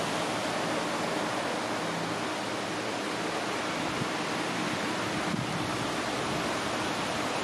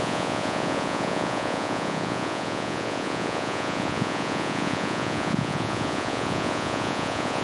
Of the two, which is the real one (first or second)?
first